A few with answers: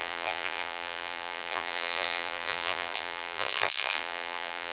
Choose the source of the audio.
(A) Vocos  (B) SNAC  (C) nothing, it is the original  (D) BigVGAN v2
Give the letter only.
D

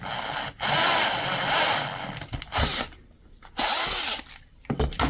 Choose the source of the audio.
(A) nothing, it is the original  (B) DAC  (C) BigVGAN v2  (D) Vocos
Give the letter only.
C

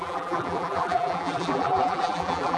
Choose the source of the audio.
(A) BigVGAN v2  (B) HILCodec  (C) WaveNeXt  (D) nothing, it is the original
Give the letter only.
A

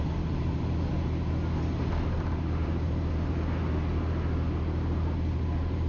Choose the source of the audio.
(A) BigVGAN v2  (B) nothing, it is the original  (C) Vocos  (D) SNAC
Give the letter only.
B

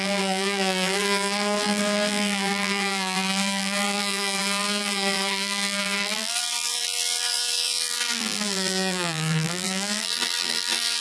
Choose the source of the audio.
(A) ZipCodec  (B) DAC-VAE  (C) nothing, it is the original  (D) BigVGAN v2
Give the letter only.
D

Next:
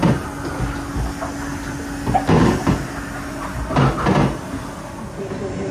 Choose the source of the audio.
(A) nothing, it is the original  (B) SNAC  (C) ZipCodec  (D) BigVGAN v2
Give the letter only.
A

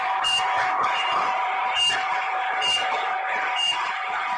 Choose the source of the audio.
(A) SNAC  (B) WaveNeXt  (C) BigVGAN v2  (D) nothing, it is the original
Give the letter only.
C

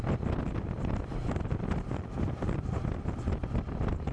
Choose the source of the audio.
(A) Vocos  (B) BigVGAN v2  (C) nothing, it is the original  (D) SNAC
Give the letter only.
B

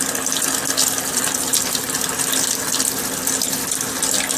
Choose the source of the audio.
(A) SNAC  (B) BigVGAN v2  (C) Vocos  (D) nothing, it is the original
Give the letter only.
D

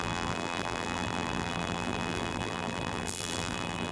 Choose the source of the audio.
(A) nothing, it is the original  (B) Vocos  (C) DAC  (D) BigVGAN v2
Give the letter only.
D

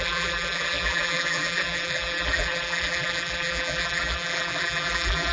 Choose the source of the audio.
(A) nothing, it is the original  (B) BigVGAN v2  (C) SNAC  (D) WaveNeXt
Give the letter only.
B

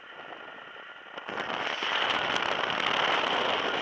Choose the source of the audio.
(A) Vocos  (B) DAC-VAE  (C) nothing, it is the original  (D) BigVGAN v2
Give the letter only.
C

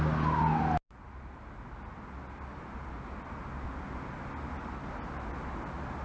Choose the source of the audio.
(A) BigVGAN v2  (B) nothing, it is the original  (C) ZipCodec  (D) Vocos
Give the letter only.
B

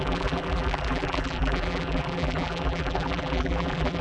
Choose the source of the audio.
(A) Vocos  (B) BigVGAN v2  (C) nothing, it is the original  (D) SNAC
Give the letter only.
B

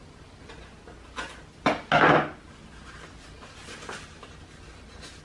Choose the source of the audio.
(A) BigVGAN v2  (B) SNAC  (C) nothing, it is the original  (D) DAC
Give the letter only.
C